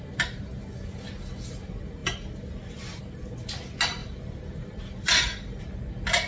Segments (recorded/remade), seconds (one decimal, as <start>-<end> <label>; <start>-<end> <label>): 0.0-2.0 recorded; 2.0-3.0 remade; 3.0-4.0 recorded; 4.0-5.6 remade; 5.6-6.3 recorded